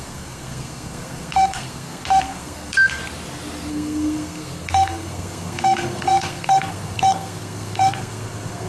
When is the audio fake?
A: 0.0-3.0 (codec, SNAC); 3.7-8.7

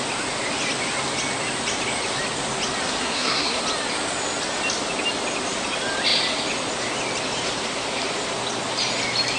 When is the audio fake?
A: 3.0-3.6 (codec, SNAC)

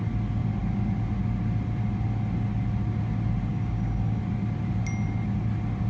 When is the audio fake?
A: 3.5-4.2 (codec, DAC)

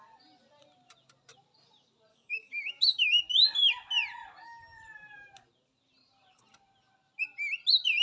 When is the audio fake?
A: 2.1-3.2 (codec, DAC)

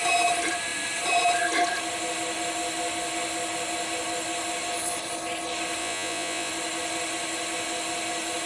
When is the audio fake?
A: 5.8-6.5 (vocoder, Vocos)

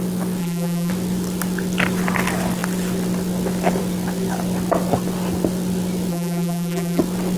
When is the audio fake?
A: 0.4-0.9 (vocoder, BigVGAN v2); 6.1-7.0

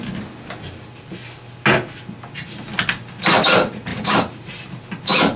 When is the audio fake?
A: 3.9-4.5 (vocoder, BigVGAN v2)